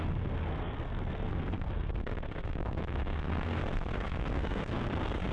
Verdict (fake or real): fake